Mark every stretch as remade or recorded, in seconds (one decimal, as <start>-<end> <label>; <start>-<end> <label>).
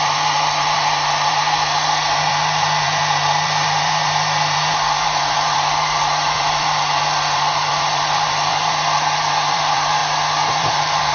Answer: 0.0-10.0 remade; 10.0-10.6 recorded; 10.6-11.1 remade